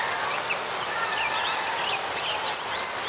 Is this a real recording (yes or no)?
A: yes